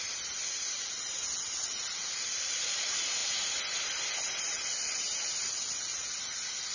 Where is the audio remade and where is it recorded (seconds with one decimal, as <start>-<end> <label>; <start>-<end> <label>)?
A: 0.0-6.7 recorded